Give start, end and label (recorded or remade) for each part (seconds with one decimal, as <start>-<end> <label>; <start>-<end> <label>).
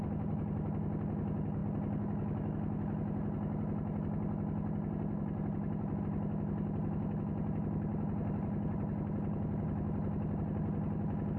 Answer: 0.0-11.4 recorded